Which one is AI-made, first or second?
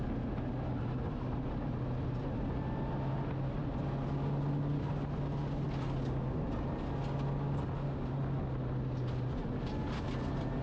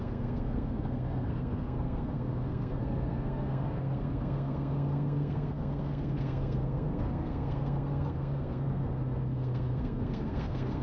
second